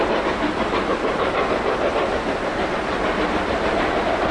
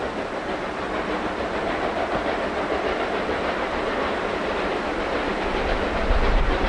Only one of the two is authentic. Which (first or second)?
second